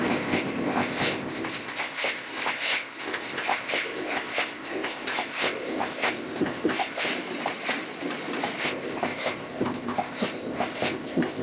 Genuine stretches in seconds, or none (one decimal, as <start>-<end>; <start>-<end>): 7.1-8.6